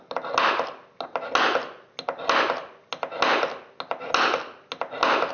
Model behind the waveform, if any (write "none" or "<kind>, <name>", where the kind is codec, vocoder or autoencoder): none